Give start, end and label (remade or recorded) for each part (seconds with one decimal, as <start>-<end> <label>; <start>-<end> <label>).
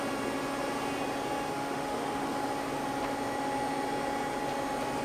0.0-1.5 recorded; 1.5-2.3 remade; 2.3-5.0 recorded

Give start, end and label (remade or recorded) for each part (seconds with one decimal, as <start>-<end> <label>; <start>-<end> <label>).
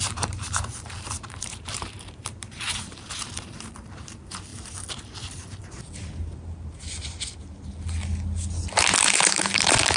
0.0-4.5 remade; 4.5-9.0 recorded; 9.0-10.0 remade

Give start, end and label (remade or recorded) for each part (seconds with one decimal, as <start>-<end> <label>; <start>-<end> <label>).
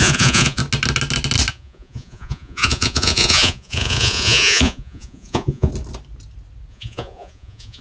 0.0-0.6 remade; 0.6-1.5 recorded; 1.5-5.7 remade; 5.7-6.7 recorded; 6.7-7.8 remade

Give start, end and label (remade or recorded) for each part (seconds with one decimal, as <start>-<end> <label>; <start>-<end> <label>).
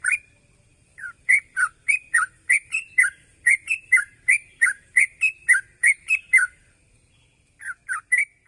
0.0-0.7 recorded; 0.7-5.2 remade; 5.2-5.8 recorded; 5.8-7.1 remade; 7.1-8.5 recorded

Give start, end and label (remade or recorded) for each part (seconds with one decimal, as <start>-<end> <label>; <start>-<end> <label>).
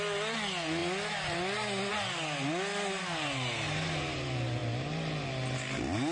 0.0-6.1 recorded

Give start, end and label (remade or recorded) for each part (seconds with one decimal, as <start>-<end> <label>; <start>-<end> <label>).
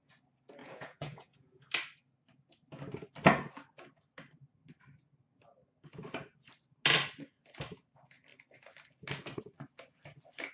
0.0-0.6 recorded; 0.6-1.6 remade; 1.6-10.5 recorded